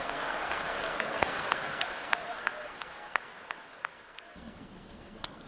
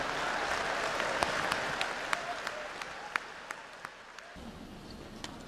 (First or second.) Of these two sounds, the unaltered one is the second